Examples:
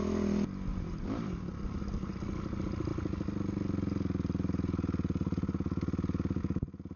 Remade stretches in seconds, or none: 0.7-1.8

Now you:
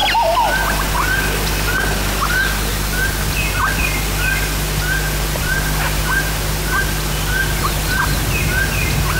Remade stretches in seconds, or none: 3.6-7.6

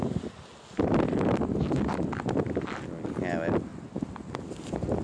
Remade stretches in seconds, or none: none

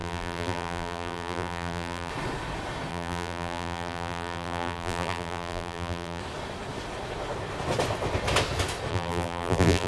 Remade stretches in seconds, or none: 0.0-2.1; 2.9-6.2; 8.9-9.9

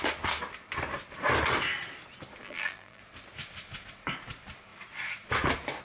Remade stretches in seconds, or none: 2.4-3.0

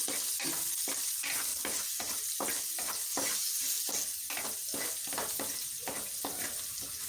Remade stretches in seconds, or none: none